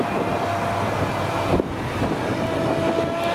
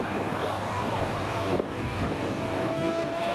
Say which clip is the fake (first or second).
second